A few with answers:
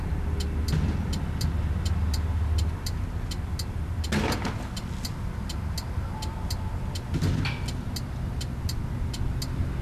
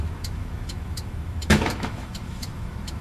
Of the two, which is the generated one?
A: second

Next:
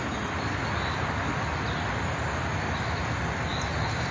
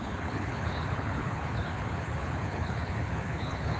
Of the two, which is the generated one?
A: second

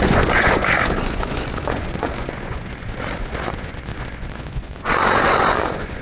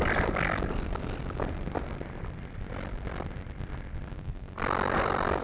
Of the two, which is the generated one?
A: first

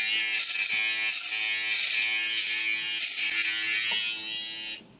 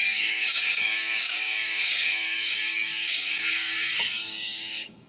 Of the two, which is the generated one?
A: second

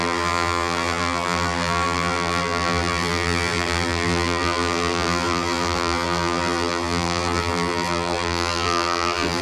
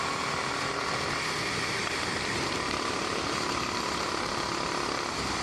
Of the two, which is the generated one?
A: first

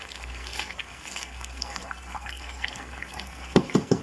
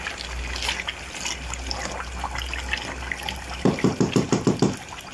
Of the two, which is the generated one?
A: first